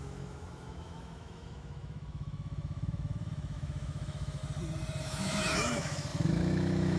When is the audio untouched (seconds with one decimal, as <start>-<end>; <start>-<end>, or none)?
4.4-5.0